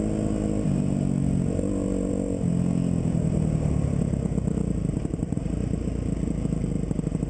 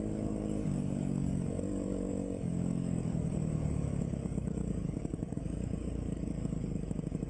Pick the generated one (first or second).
second